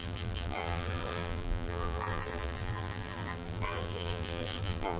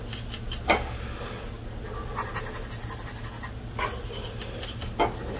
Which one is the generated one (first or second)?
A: first